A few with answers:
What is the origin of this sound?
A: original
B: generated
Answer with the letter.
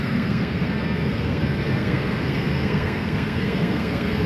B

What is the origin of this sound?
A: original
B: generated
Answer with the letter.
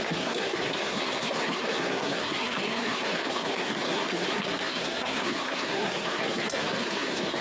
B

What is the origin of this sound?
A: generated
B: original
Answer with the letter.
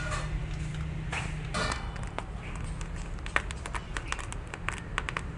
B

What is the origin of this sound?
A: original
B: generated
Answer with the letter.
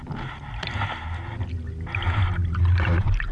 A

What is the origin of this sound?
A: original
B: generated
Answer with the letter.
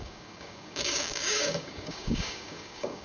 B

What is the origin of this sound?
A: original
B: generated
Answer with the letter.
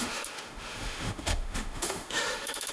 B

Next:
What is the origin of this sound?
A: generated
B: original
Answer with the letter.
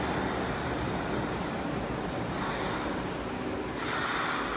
B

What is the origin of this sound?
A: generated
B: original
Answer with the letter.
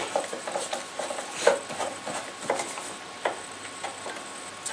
B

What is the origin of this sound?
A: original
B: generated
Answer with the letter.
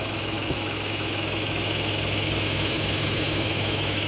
B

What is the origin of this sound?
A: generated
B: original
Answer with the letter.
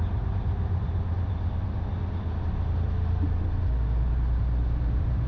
B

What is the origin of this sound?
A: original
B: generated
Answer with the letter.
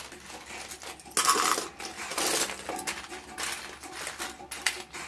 A